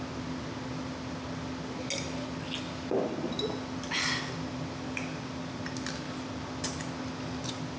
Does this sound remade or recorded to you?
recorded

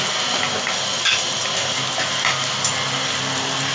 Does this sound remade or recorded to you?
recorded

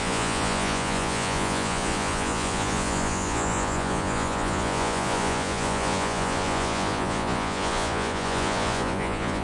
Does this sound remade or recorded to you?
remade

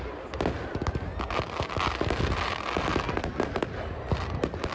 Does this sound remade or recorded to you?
recorded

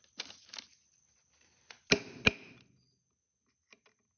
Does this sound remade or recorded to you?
recorded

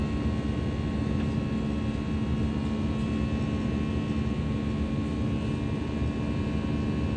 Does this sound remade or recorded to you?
recorded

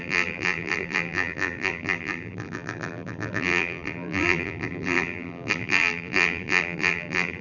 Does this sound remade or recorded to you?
remade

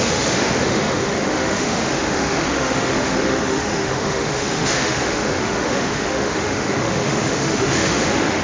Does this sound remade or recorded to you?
remade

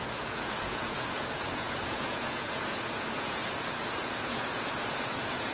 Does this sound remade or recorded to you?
remade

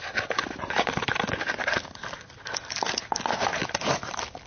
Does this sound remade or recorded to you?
recorded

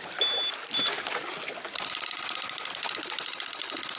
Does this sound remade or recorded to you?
recorded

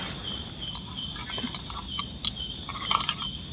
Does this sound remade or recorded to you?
remade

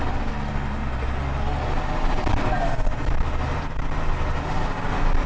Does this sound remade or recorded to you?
recorded